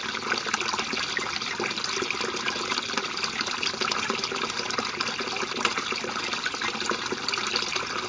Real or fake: real